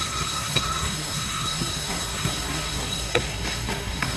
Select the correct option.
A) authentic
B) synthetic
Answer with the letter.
B